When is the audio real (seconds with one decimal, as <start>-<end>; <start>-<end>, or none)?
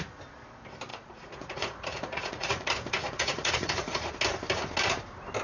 0.0-0.9; 4.1-5.4